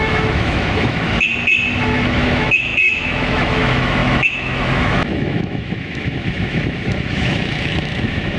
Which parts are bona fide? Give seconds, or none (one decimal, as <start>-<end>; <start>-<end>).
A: 1.3-2.1